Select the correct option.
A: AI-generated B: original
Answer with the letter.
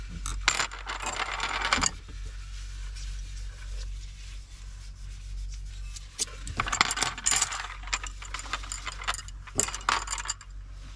B